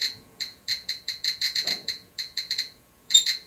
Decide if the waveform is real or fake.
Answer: fake